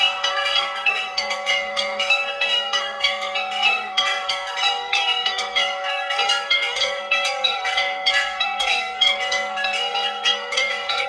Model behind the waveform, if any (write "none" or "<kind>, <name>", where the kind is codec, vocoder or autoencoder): codec, SNAC